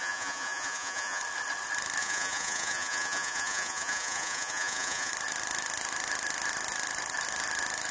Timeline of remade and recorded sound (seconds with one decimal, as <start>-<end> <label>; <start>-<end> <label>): 0.0-1.2 remade; 1.2-2.0 recorded; 2.0-5.1 remade; 5.1-7.9 recorded